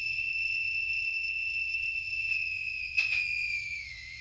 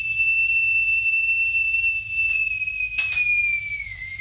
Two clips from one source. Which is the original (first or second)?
second